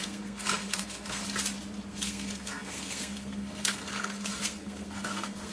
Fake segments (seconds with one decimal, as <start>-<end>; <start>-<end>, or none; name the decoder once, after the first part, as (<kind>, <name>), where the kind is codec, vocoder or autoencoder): 0.0-1.2 (codec, SNAC); 1.9-5.5